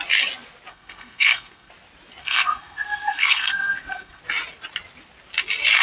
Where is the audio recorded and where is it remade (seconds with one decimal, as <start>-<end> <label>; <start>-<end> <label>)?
0.0-0.7 recorded; 0.7-1.7 remade; 1.7-2.2 recorded; 2.2-4.2 remade; 4.2-5.8 recorded